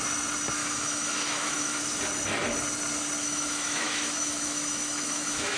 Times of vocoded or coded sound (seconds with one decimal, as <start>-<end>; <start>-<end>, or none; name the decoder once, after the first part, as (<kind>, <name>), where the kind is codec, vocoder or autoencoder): 0.6-1.8 (autoencoder, DAC-VAE); 3.2-5.6